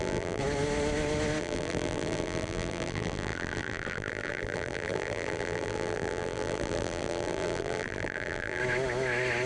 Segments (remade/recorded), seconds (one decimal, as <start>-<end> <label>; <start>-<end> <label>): 0.0-0.4 remade; 0.4-1.4 recorded; 1.4-8.6 remade; 8.6-9.5 recorded